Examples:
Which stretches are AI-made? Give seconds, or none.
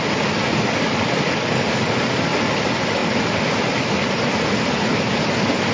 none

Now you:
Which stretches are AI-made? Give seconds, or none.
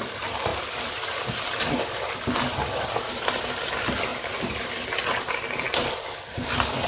0.5-1.1 (vocoder, BigVGAN v2); 4.1-4.6